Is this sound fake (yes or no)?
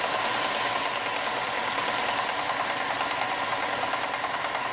no